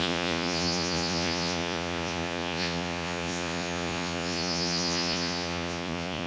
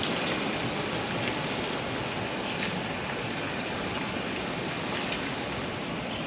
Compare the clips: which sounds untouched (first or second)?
second